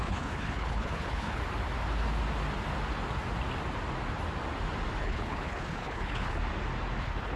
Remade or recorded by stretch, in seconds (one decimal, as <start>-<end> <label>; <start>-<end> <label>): 0.0-1.4 remade; 1.4-5.0 recorded; 5.0-6.4 remade; 6.4-7.0 recorded; 7.0-7.4 remade